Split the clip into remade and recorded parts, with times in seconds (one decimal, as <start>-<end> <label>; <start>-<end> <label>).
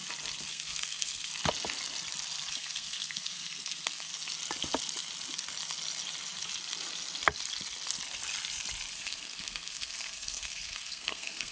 0.0-0.5 recorded; 0.5-1.3 remade; 1.3-2.5 recorded; 2.5-4.1 remade; 4.1-8.9 recorded; 8.9-11.5 remade